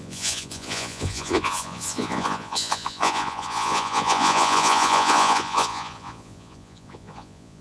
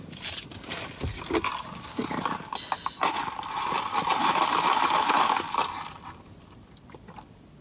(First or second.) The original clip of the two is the second